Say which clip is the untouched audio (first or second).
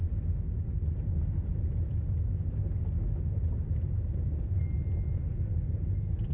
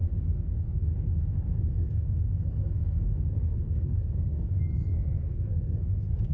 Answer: first